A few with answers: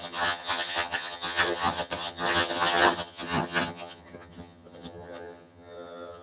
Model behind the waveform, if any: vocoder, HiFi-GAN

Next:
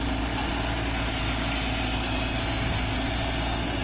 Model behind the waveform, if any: none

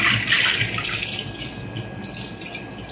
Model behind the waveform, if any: none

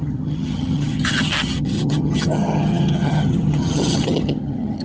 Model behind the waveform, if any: vocoder, HiFi-GAN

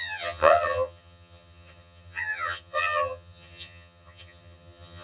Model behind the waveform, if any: vocoder, HiFi-GAN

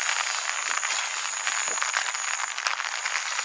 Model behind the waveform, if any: none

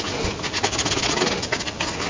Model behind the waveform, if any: none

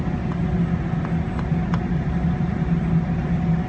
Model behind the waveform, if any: none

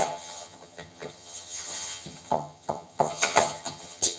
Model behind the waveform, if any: vocoder, HiFi-GAN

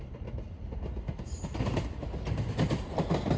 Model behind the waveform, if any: none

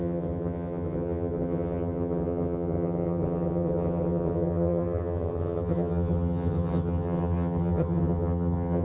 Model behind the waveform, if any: vocoder, HiFi-GAN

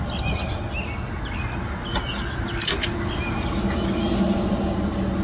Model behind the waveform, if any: none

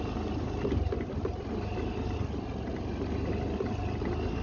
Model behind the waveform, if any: none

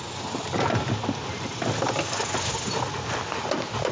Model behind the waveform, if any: none